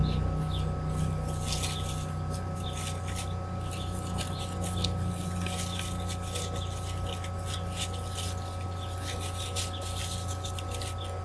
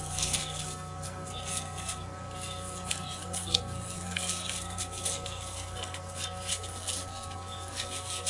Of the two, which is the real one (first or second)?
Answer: first